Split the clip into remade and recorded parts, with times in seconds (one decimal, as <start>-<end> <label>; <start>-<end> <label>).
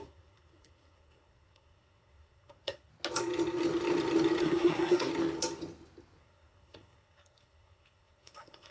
0.0-2.9 remade; 2.9-4.4 recorded; 4.4-5.1 remade; 5.1-6.2 recorded; 6.2-8.7 remade